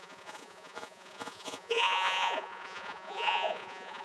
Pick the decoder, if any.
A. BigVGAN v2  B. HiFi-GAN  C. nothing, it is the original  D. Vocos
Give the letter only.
D